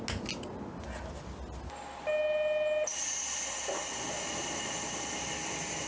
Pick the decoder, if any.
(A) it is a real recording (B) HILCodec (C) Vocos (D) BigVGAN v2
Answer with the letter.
A